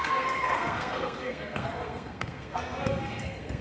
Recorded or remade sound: remade